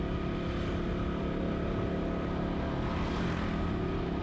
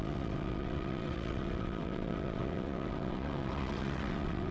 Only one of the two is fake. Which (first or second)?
second